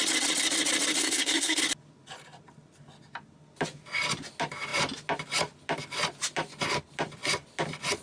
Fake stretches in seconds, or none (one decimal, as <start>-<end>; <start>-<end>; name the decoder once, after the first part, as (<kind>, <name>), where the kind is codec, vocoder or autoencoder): 1.0-1.6 (codec, SNAC)